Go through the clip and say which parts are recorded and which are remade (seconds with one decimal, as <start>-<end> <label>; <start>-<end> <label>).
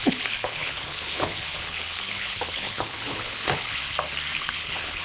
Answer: 0.0-3.8 remade; 3.8-4.4 recorded; 4.4-5.0 remade